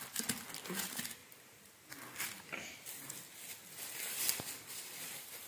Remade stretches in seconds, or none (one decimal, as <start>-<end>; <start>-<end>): none